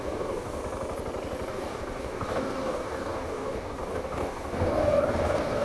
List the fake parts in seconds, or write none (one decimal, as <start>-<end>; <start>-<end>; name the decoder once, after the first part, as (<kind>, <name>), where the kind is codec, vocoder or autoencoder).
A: 0.0-0.6 (codec, DAC); 1.5-5.6